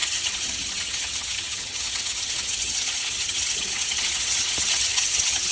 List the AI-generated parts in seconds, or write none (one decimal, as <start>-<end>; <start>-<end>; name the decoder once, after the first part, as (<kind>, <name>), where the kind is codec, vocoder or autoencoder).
0.0-5.5 (vocoder, HiFi-GAN)